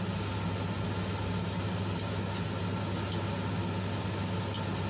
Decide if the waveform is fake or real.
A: real